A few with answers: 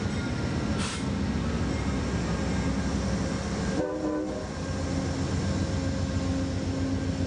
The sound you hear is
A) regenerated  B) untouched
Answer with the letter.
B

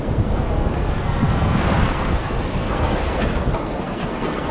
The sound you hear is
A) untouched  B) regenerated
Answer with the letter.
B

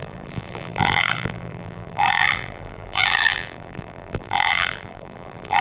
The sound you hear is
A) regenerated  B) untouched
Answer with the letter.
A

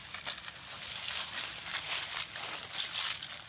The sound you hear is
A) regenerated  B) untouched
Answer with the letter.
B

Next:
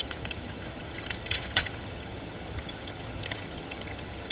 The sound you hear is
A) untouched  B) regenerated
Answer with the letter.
B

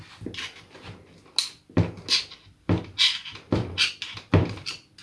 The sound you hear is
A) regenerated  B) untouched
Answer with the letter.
B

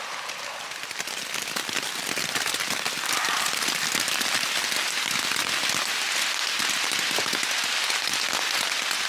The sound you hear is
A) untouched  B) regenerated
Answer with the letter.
A